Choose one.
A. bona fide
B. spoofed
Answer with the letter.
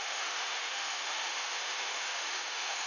B